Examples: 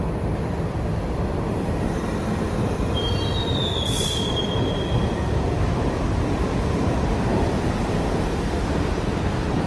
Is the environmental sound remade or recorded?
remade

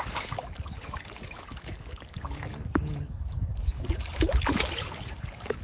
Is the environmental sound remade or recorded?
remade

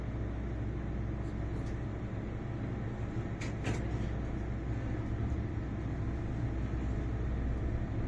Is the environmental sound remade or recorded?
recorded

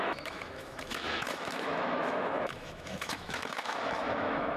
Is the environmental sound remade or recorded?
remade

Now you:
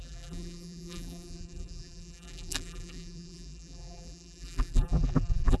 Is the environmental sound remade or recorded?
remade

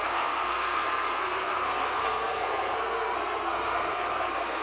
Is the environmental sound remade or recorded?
remade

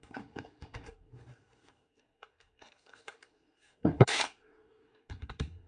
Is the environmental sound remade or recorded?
remade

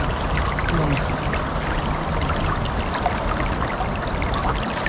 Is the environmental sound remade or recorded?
recorded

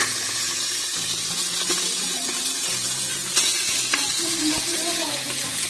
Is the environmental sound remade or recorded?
remade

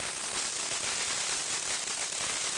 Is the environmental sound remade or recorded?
recorded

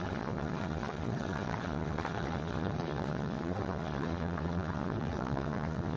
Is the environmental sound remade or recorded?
remade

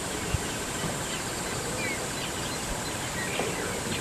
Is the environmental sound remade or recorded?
recorded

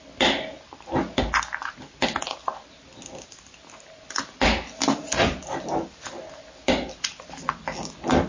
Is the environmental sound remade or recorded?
recorded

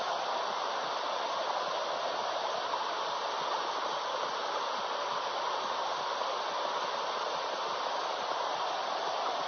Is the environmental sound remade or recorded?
recorded